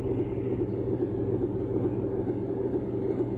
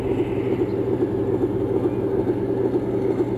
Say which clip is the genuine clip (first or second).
second